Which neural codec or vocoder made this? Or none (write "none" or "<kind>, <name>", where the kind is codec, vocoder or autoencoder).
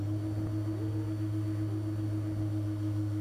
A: none